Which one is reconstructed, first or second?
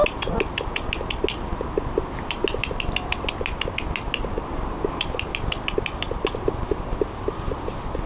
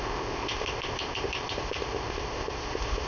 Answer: second